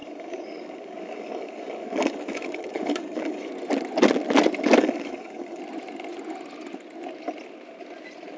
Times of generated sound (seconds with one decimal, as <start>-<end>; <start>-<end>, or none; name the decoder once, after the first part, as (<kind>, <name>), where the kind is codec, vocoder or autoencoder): 0.0-3.5 (codec, DAC); 4.8-5.6